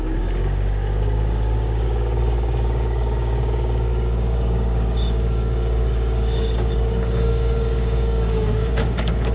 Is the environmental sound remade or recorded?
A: remade